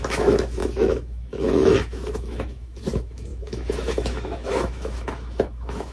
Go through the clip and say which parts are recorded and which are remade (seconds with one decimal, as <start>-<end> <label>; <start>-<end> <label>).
0.0-5.9 remade